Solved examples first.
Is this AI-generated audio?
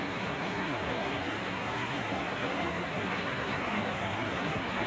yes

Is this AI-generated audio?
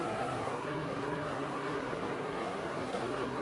yes